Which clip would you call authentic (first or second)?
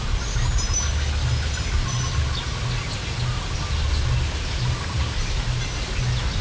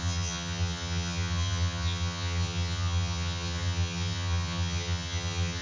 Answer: first